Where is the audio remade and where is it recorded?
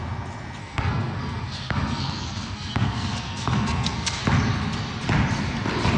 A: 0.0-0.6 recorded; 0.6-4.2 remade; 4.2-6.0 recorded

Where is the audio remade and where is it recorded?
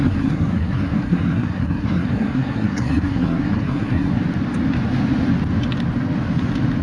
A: 0.0-4.1 remade; 4.1-6.8 recorded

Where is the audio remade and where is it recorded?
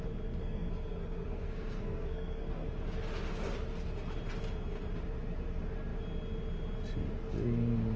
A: 0.0-0.4 recorded; 0.4-2.7 remade; 2.7-8.0 recorded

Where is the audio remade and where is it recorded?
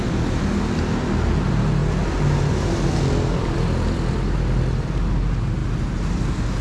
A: 0.0-6.6 recorded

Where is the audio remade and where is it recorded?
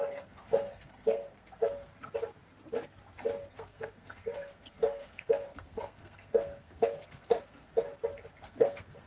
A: 0.0-1.9 remade; 1.9-3.5 recorded; 3.5-7.7 remade; 7.7-8.4 recorded; 8.4-9.1 remade